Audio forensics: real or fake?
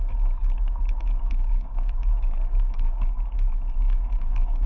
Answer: fake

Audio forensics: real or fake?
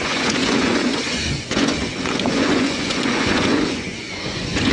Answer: fake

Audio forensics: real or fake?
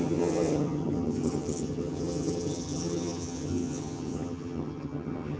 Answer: fake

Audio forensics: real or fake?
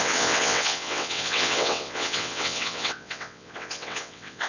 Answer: fake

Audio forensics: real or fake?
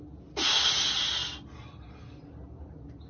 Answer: real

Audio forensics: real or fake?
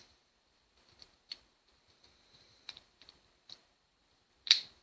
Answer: fake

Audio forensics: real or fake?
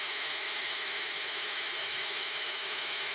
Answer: fake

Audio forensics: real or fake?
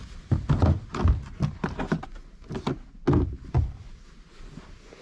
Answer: real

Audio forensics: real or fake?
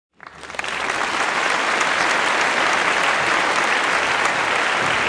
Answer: real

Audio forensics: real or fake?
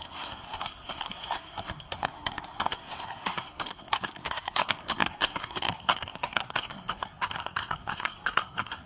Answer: fake